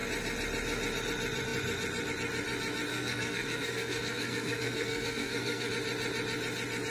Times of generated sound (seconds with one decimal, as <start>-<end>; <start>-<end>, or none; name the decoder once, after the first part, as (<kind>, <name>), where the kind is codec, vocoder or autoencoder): 2.9-5.7 (codec, SNAC)